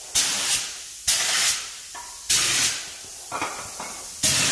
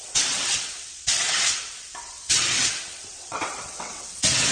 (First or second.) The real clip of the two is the first